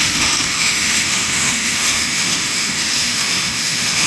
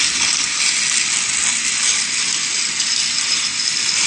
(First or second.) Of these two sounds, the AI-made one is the first